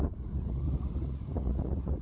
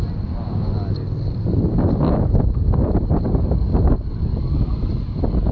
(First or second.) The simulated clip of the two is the first